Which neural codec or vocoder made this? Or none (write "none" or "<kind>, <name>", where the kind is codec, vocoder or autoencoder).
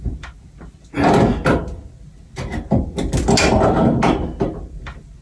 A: none